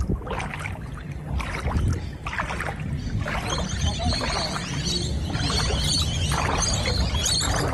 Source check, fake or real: real